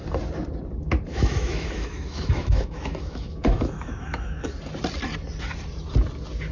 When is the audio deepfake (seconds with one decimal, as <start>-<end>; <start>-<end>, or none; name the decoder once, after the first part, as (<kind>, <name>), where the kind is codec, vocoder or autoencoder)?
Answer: 1.1-4.5 (autoencoder, DAC-VAE)